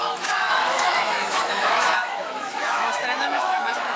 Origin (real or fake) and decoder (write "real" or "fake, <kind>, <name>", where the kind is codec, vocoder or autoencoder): fake, autoencoder, DAC-VAE